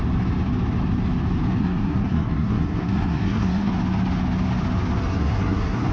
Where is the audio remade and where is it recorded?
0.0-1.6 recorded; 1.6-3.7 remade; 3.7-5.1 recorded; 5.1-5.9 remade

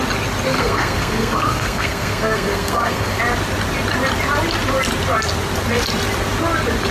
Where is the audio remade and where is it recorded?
0.0-0.5 recorded; 0.5-3.2 remade; 3.2-6.9 recorded

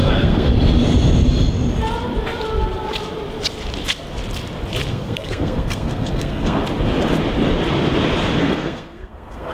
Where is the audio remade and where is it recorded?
0.0-0.5 remade; 0.5-4.9 recorded; 4.9-6.6 remade; 6.6-8.4 recorded; 8.4-9.5 remade

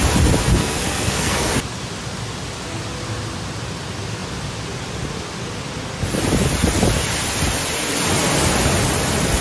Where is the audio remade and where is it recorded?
0.0-0.6 recorded; 0.6-1.5 remade; 1.5-9.4 recorded

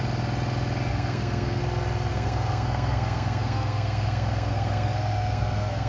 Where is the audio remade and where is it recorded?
0.0-0.9 recorded; 0.9-1.6 remade; 1.6-2.1 recorded; 2.1-5.9 remade

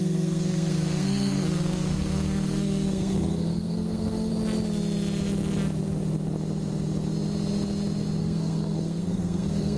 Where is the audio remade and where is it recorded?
0.0-4.3 remade; 4.3-8.2 recorded; 8.2-9.8 remade

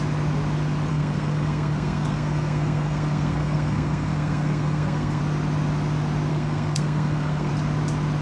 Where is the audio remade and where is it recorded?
0.0-0.9 recorded; 0.9-5.2 remade; 5.2-6.3 recorded; 6.3-7.5 remade; 7.5-8.2 recorded